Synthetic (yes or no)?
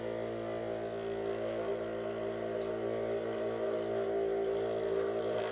no